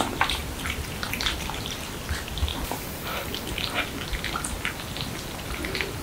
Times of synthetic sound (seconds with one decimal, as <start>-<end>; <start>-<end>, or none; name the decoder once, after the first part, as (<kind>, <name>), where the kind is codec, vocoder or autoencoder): 0.4-2.0 (vocoder, BigVGAN v2)